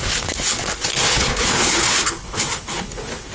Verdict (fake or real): fake